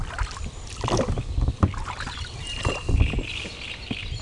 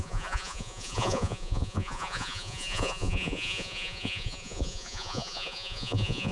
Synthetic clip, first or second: second